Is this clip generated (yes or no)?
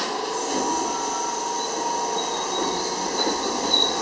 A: no